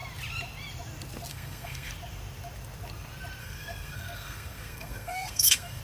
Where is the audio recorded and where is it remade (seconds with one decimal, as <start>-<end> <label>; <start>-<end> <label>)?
0.0-1.3 recorded; 1.3-1.9 remade; 1.9-3.4 recorded; 3.4-5.8 remade